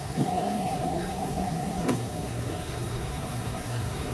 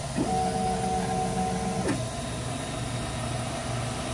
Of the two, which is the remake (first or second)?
first